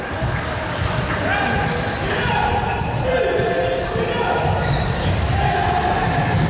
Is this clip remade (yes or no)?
no